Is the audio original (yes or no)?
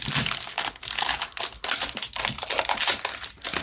yes